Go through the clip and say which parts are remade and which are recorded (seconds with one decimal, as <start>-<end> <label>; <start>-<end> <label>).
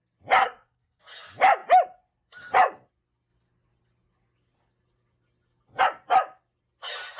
0.0-0.4 recorded; 0.4-1.0 remade; 1.0-7.2 recorded